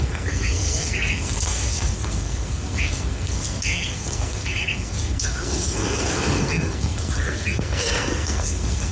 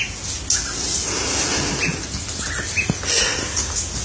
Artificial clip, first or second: first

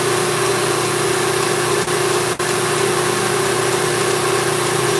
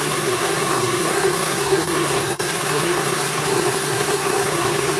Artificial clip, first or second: second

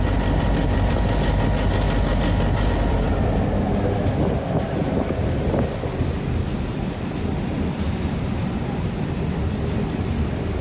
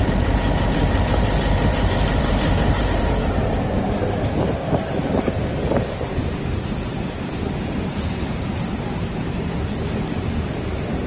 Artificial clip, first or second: second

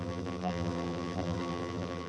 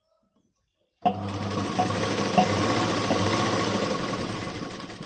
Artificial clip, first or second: first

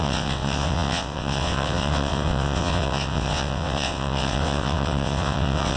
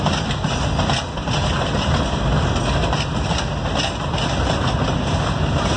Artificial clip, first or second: first